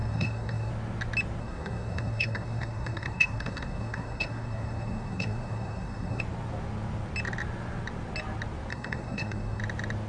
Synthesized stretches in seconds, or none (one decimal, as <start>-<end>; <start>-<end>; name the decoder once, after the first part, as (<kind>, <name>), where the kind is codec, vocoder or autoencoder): 0.0-0.7 (codec, SNAC); 1.4-6.2; 8.7-9.6